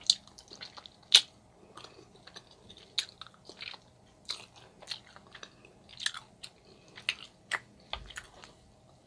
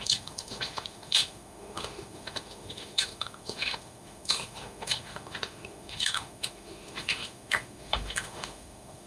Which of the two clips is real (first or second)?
first